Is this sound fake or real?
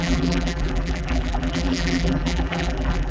fake